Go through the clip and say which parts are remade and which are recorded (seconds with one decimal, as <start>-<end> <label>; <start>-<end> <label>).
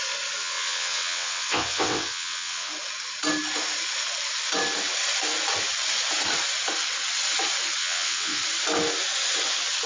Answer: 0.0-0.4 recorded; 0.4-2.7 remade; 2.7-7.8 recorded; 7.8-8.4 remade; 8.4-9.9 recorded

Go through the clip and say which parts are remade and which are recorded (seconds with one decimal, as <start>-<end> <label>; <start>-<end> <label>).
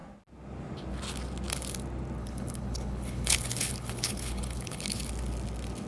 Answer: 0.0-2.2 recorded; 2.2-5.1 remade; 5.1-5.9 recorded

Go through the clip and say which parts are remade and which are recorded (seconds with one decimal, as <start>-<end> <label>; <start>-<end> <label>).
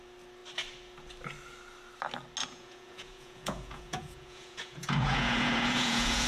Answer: 0.0-2.4 recorded; 2.4-6.3 remade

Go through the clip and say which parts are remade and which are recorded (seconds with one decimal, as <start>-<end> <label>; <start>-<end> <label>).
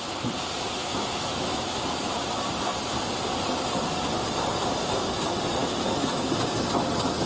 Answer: 0.0-0.8 recorded; 0.8-1.6 remade; 1.6-5.6 recorded; 5.6-6.3 remade; 6.3-7.3 recorded